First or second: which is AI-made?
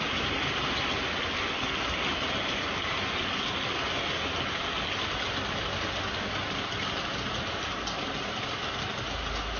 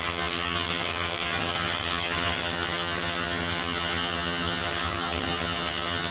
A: second